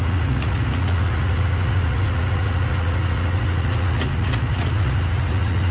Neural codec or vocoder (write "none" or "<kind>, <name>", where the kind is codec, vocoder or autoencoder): vocoder, Vocos